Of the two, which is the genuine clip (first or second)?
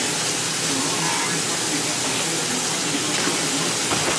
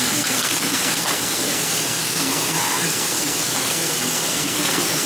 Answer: first